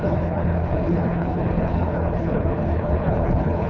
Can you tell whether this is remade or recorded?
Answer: remade